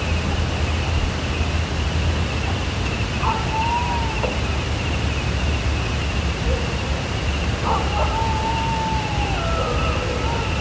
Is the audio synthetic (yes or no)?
no